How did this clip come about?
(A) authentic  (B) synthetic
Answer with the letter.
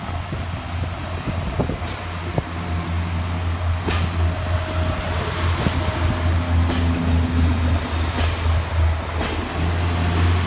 A